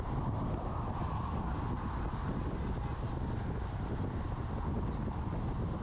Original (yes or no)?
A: yes